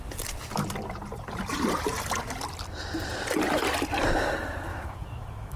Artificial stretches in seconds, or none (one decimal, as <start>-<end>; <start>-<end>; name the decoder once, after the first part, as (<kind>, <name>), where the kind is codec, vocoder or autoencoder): 4.7-5.6 (autoencoder, DAC-VAE)